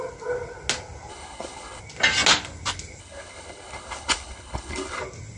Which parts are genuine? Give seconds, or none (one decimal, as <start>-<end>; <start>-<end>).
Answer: 0.0-1.1; 1.8-3.0; 5.0-5.4